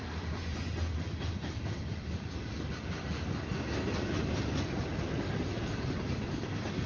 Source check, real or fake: real